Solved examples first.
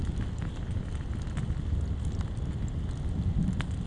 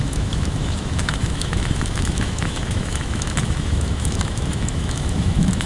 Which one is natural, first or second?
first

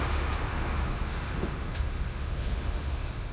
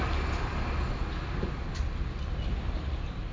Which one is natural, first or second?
second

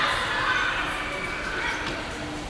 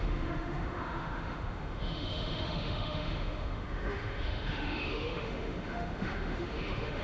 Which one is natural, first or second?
first